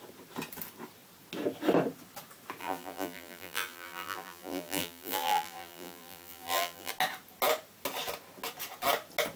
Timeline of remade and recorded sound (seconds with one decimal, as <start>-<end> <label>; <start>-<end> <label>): 0.0-2.6 recorded; 2.6-6.9 remade; 6.9-9.4 recorded